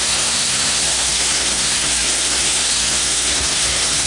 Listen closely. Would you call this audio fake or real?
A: fake